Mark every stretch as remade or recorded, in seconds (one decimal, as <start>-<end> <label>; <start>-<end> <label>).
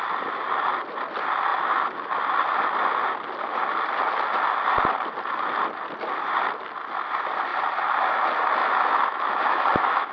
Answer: 0.0-8.6 recorded; 8.6-10.1 remade